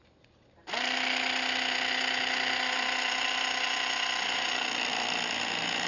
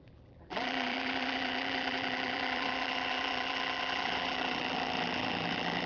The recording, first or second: first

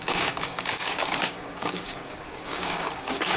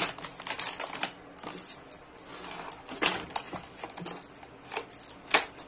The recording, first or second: second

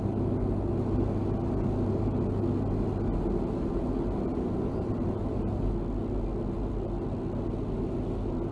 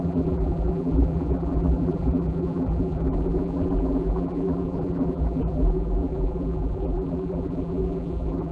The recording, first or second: first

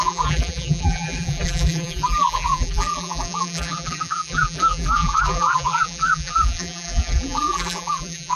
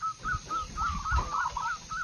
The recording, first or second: second